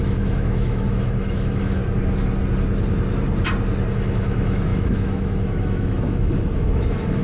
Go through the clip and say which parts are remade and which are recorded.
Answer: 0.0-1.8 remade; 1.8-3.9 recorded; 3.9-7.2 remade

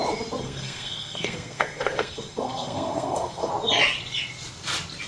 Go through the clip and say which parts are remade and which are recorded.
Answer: 0.0-0.4 recorded; 0.4-3.5 remade; 3.5-5.1 recorded

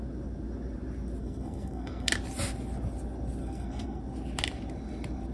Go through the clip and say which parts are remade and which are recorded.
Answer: 0.0-1.2 recorded; 1.2-2.1 remade; 2.1-3.4 recorded; 3.4-4.0 remade; 4.0-5.3 recorded

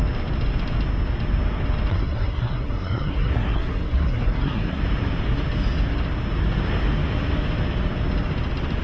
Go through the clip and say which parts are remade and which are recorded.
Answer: 0.0-1.9 recorded; 1.9-4.8 remade; 4.8-8.8 recorded

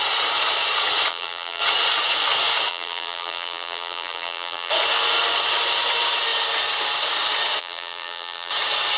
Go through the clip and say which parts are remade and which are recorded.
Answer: 0.0-1.1 recorded; 1.1-1.6 remade; 1.6-2.7 recorded; 2.7-4.7 remade; 4.7-7.6 recorded; 7.6-8.5 remade; 8.5-9.0 recorded

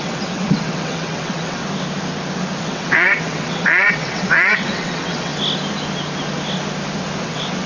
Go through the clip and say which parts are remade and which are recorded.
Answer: 0.0-1.6 remade; 1.6-2.6 recorded; 2.6-5.3 remade; 5.3-7.2 recorded; 7.2-7.7 remade